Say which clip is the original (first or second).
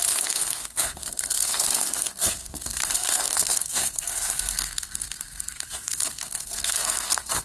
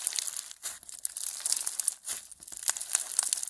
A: second